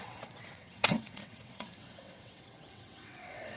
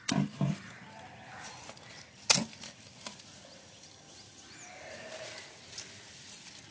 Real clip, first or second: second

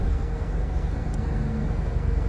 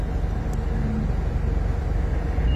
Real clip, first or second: second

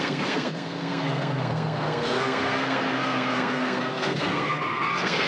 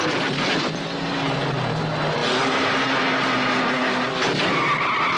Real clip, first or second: second